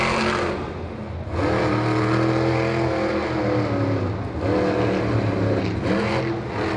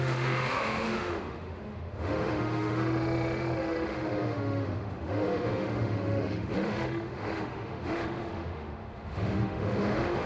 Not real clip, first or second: second